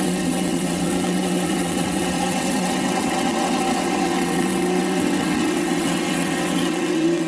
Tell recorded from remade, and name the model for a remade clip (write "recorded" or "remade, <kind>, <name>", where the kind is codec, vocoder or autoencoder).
remade, vocoder, WaveNeXt